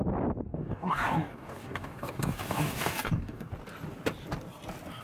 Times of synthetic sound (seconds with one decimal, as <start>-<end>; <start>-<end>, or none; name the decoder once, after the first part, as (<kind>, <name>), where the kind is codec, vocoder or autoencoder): 0.5-3.5 (codec, DAC)